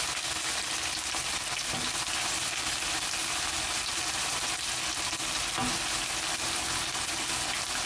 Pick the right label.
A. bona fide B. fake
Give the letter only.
A